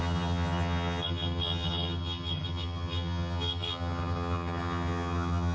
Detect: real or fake fake